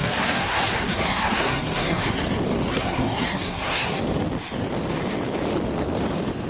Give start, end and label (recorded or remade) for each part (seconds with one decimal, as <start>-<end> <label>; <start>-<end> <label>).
0.0-2.2 remade; 2.2-2.7 recorded; 2.7-4.0 remade; 4.0-6.5 recorded